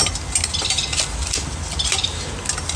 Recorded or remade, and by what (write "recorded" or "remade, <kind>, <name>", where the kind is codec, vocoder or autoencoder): recorded